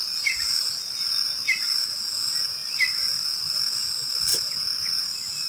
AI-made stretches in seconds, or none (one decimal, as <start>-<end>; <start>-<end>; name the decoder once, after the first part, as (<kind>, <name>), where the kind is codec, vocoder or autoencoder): 0.0-2.0 (vocoder, BigVGAN v2); 2.6-3.6; 4.3-5.5